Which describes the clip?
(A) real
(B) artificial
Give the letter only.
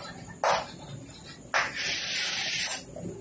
A